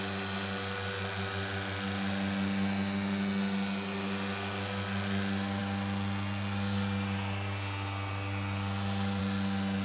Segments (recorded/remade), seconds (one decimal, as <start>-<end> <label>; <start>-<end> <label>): 0.0-9.8 recorded